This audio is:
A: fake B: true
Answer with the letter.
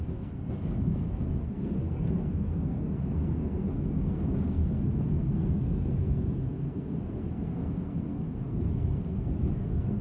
A